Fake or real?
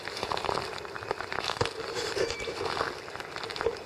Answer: real